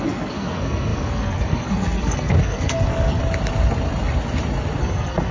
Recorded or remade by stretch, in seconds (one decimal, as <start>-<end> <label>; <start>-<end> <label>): 0.0-3.2 remade; 3.2-4.8 recorded; 4.8-5.3 remade